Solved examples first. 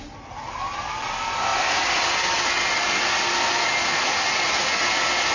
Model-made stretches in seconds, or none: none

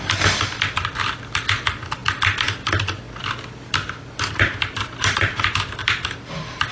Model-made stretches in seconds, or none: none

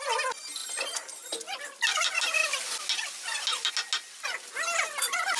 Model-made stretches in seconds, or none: none

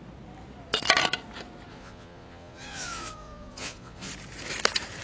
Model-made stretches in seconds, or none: 1.7-4.1 (vocoder, Vocos)

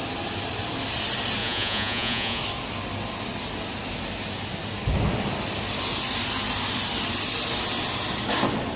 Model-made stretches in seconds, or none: 1.4-2.4 (vocoder, Vocos)